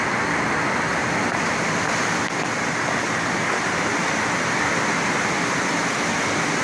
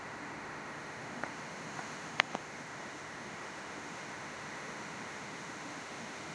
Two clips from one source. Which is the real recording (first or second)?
first